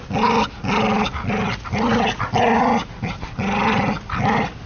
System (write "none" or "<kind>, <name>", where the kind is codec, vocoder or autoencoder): none